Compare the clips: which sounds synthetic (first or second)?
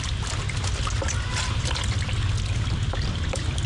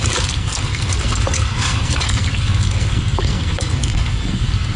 second